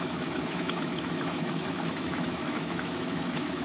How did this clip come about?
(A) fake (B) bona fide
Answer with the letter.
A